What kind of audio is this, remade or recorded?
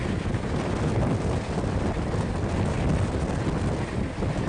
recorded